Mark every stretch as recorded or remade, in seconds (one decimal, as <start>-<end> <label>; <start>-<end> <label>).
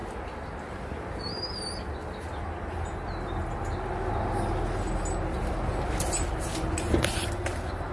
0.0-7.9 recorded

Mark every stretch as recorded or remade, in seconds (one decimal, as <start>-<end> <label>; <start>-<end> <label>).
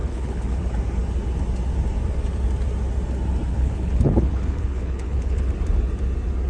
0.0-0.6 remade; 0.6-3.5 recorded; 3.5-5.5 remade; 5.5-6.5 recorded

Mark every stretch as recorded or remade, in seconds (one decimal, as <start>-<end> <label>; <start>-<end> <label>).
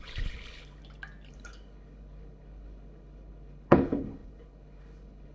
0.0-0.8 remade; 0.8-1.3 recorded; 1.3-5.3 remade